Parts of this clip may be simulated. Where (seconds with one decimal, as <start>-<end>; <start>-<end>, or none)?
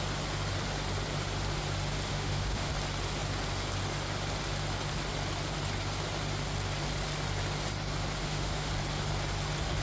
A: 2.1-2.7; 8.2-8.7